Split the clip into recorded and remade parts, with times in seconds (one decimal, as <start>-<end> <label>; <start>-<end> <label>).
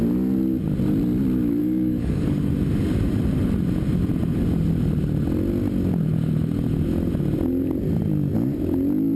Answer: 0.0-1.6 recorded; 1.6-2.5 remade; 2.5-9.2 recorded